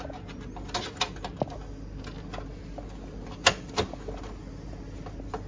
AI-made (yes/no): no